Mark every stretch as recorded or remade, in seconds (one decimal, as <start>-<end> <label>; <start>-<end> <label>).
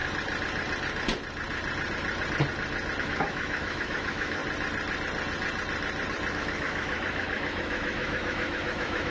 0.0-3.0 recorded; 3.0-4.4 remade; 4.4-6.3 recorded; 6.3-9.1 remade